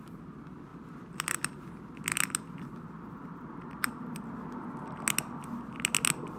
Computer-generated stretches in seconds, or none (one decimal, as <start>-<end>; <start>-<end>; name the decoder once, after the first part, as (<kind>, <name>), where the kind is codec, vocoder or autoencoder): none